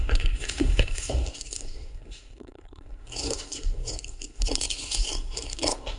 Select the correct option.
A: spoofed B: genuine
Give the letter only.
A